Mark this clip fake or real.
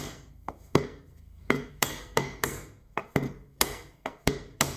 fake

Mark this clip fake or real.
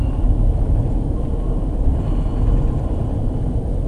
real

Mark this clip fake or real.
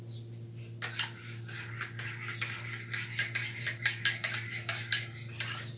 real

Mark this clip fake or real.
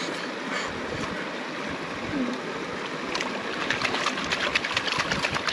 real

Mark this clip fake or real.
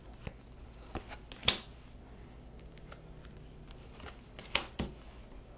real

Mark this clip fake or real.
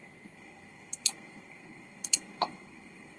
fake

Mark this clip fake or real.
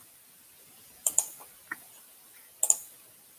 real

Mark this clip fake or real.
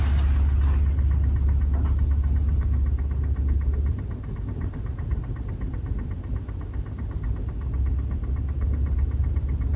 real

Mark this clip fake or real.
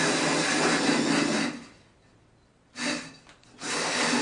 real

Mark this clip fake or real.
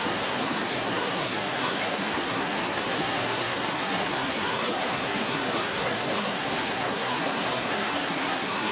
fake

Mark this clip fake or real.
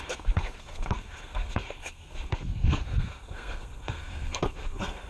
fake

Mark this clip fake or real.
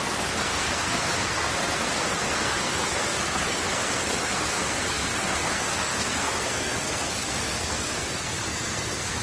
fake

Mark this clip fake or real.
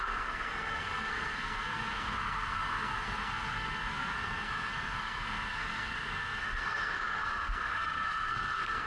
fake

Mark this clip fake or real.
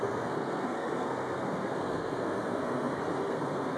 fake